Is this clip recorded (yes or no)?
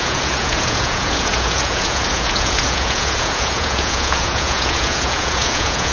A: no